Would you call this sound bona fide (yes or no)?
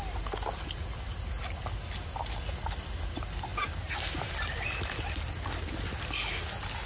yes